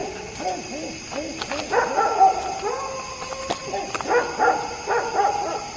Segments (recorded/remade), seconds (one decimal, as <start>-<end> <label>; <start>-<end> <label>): 0.0-5.8 recorded